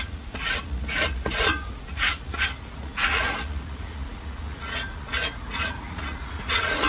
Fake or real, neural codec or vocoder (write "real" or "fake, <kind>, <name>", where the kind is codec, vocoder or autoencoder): fake, vocoder, Vocos